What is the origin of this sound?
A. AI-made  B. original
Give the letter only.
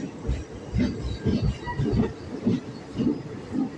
B